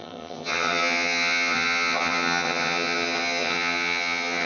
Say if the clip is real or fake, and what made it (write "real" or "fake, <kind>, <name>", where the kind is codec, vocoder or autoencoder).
fake, vocoder, HiFi-GAN